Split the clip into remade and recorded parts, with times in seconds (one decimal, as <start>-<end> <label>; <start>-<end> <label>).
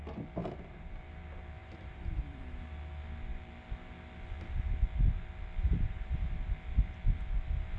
0.0-0.4 recorded; 0.4-1.0 remade; 1.0-1.6 recorded; 1.6-2.6 remade; 2.6-5.6 recorded; 5.6-6.3 remade; 6.3-7.8 recorded